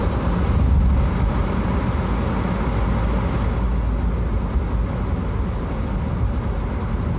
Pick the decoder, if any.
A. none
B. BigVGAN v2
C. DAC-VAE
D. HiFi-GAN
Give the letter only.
A